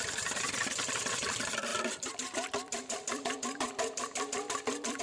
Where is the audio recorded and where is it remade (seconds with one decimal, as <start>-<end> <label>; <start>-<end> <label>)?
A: 0.0-5.0 remade